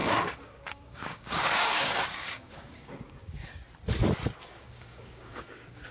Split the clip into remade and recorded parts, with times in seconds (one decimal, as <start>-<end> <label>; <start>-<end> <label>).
0.0-3.6 remade; 3.6-4.4 recorded; 4.4-5.9 remade